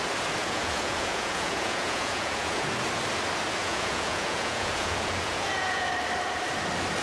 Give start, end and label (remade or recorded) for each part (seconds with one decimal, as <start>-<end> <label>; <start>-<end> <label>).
0.0-0.4 recorded; 0.4-2.7 remade; 2.7-3.6 recorded; 3.6-5.9 remade; 5.9-7.0 recorded